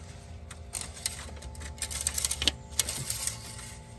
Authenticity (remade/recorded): recorded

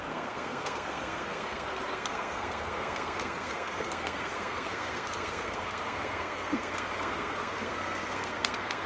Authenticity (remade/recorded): remade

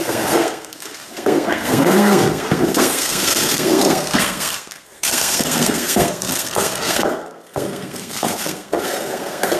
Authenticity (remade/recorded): remade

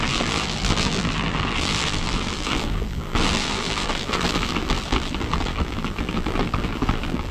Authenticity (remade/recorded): remade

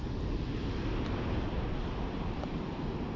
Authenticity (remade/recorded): recorded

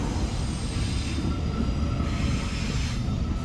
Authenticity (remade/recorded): recorded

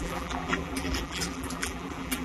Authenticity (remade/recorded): remade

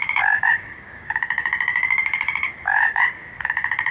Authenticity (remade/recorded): remade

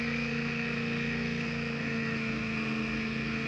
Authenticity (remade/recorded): remade